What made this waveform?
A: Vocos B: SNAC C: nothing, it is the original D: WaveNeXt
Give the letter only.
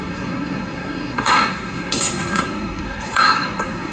B